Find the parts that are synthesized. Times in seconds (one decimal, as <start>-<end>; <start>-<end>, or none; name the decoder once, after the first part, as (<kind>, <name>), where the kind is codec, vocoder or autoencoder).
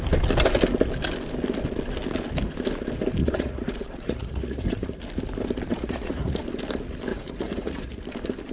3.2-5.0 (vocoder, Vocos); 5.7-6.4; 7.1-8.0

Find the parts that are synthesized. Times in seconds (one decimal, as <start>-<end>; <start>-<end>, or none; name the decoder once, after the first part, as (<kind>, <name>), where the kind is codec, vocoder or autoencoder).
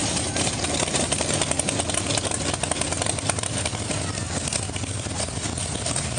0.0-1.1 (vocoder, BigVGAN v2)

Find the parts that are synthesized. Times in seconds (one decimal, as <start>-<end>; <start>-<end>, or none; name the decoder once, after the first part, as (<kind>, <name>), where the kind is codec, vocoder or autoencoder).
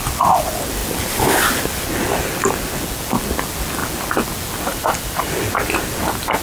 4.7-5.3 (vocoder, BigVGAN v2)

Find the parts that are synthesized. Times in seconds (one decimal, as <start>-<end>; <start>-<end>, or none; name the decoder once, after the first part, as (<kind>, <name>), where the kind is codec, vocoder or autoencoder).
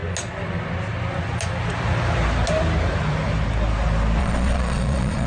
4.2-5.3 (vocoder, Vocos)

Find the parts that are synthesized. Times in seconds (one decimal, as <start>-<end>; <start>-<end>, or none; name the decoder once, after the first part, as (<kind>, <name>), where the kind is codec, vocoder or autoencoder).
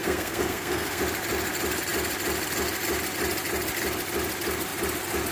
0.0-1.0 (codec, SNAC)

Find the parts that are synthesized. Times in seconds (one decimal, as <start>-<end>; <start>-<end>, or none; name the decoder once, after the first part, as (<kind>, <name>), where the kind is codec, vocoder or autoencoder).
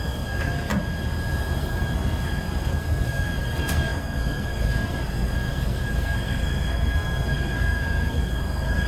0.0-0.7 (codec, SNAC); 1.6-8.9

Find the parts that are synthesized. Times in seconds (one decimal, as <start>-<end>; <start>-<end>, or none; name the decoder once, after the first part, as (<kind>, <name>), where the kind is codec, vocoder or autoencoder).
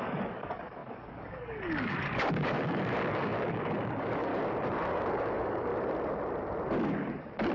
0.0-4.3 (codec, DAC); 4.9-5.7; 6.7-7.5